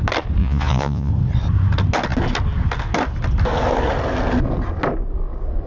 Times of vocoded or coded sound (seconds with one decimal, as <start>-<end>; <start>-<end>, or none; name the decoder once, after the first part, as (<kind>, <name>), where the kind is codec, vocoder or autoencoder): 0.4-1.1 (vocoder, Vocos)

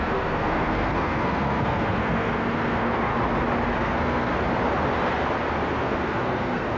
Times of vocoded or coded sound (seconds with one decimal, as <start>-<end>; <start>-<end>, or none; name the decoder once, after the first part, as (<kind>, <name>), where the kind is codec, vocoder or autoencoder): 0.0-3.1 (codec, SNAC); 3.8-4.3; 5.8-6.8

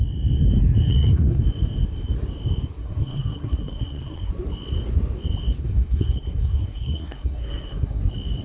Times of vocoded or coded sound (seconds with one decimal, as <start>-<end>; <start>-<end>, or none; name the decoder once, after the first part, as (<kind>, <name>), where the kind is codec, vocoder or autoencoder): 0.9-1.4 (codec, SNAC); 2.8-4.3; 5.6-8.0

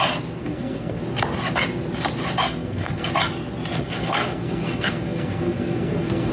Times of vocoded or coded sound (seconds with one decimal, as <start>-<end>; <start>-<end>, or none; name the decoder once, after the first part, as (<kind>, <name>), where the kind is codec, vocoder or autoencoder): 0.4-1.0 (codec, SNAC); 2.4-3.1; 3.7-6.3

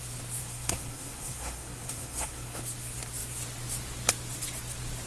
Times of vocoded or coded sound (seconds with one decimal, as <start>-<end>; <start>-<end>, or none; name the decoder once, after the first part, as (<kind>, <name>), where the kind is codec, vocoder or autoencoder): 0.4-2.6 (codec, SNAC)

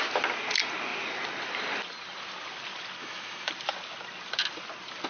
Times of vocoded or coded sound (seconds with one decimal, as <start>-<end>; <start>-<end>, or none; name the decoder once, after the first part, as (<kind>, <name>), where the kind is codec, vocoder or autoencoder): 3.0-3.5 (autoencoder, DAC-VAE)

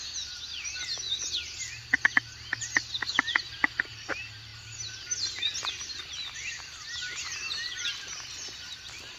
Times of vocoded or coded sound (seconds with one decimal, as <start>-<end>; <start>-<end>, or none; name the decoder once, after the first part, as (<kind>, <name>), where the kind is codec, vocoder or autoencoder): none

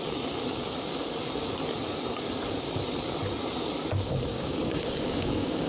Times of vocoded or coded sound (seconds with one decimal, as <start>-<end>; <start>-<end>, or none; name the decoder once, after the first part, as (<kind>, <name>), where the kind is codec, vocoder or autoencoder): 4.3-5.7 (codec, DAC)